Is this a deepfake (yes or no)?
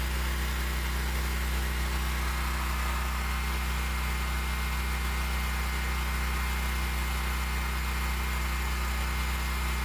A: no